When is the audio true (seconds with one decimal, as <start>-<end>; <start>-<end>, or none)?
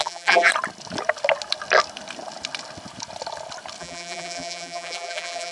0.5-3.8